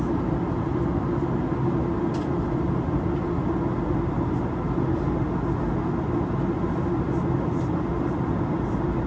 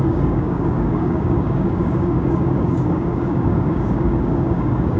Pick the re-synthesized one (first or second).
second